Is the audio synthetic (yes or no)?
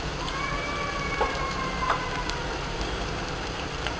yes